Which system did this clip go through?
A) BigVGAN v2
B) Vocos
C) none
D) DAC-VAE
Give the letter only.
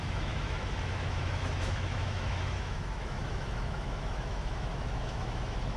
D